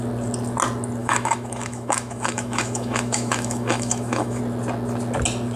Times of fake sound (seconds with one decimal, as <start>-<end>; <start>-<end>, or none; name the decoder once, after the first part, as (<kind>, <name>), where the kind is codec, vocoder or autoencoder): 1.0-4.4 (autoencoder, DAC-VAE)